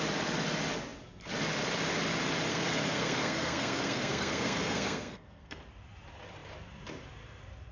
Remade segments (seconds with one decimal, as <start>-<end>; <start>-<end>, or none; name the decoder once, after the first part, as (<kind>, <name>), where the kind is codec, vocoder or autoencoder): 2.5-5.6 (codec, SNAC)